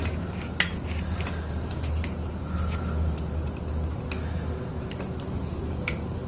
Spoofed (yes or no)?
no